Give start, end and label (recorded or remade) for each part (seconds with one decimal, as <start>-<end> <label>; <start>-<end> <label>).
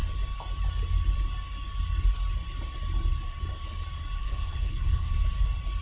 0.0-4.2 recorded; 4.2-5.1 remade; 5.1-5.8 recorded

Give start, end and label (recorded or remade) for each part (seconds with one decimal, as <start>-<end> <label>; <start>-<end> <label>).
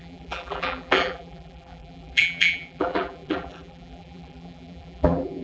0.0-5.4 remade